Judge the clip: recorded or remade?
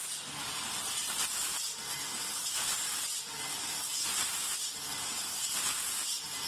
recorded